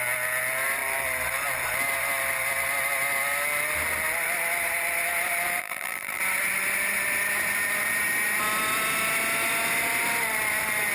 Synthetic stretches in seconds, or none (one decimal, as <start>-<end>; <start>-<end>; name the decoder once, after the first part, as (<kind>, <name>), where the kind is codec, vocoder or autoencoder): 5.6-6.2 (vocoder, BigVGAN v2)